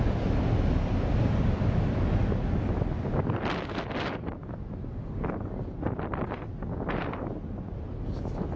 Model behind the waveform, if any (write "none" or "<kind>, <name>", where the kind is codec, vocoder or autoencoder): none